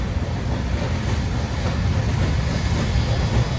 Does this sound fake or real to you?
real